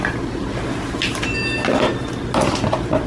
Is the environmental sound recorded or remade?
recorded